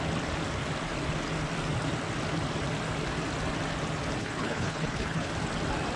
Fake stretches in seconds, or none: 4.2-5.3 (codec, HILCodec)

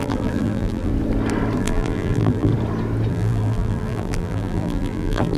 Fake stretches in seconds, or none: 0.0-0.9 (vocoder, BigVGAN v2); 1.6-2.5; 3.1-5.4

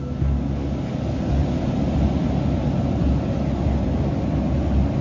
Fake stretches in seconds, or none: none

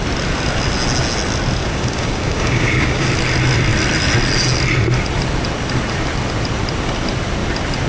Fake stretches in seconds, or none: 1.6-3.1 (codec, DAC)

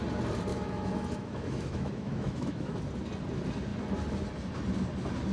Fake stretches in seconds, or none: 0.5-2.8 (autoencoder, DAC-VAE)

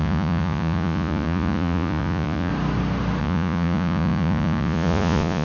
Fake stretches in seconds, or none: 0.0-2.5 (vocoder, Vocos); 3.2-5.4